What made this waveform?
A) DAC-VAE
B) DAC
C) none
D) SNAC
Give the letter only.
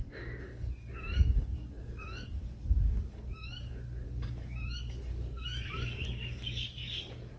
B